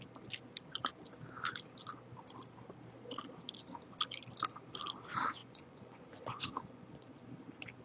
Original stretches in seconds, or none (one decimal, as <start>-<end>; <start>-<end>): 0.0-5.4; 7.2-7.8